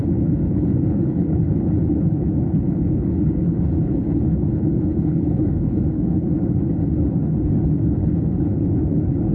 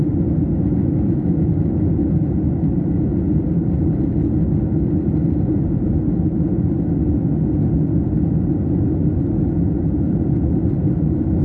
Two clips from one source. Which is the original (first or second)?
second